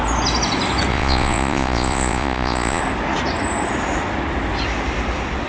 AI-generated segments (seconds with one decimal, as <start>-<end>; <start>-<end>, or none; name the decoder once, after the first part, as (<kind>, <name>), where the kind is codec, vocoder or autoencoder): 0.9-2.8 (vocoder, Vocos)